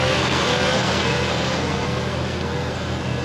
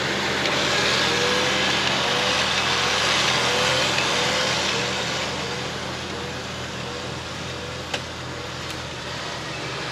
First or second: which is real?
second